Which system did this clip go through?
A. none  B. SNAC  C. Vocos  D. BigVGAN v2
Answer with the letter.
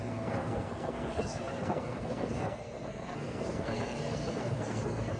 B